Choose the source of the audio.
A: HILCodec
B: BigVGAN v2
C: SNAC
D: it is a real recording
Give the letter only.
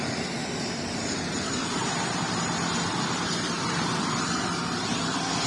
B